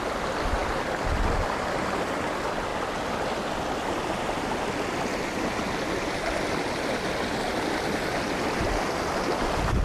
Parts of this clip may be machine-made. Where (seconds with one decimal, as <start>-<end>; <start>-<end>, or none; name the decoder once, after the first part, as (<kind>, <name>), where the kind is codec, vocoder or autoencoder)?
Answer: none